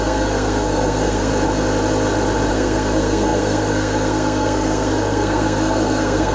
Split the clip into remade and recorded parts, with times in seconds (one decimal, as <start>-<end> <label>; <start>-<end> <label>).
0.0-1.3 remade; 1.3-2.5 recorded; 2.5-6.3 remade